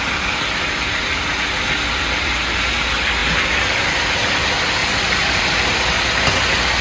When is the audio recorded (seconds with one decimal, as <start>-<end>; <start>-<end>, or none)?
0.0-6.8